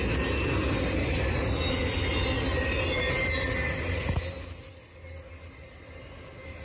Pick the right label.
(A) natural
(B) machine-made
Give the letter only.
A